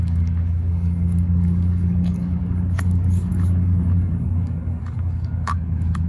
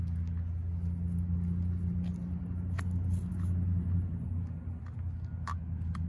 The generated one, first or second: first